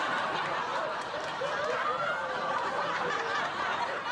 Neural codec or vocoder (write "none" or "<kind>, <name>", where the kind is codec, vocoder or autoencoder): none